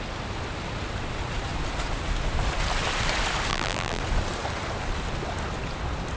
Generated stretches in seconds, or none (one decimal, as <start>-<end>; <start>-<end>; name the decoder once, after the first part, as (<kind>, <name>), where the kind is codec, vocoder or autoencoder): 3.5-4.0 (vocoder, BigVGAN v2)